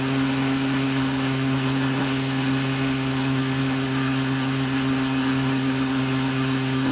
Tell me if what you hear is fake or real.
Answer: fake